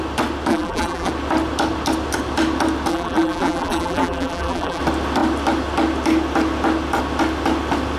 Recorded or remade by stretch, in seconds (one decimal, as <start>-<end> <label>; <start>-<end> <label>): 0.0-0.5 recorded; 0.5-1.1 remade; 1.1-2.9 recorded; 2.9-4.8 remade; 4.8-8.0 recorded